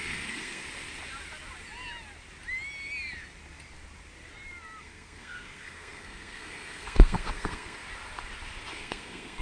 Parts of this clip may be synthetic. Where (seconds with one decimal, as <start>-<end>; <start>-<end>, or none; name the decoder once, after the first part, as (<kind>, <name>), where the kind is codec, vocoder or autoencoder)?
0.0-0.6 (codec, SNAC); 4.8-7.8; 8.7-9.4